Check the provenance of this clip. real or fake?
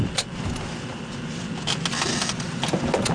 real